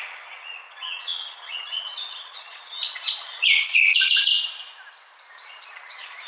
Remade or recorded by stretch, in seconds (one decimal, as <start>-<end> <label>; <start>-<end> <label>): 0.0-4.3 remade; 4.3-5.3 recorded; 5.3-6.3 remade